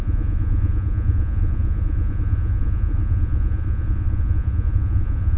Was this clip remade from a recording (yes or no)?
yes